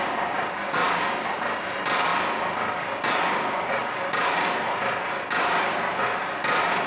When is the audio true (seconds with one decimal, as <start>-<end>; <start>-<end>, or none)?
0.0-6.9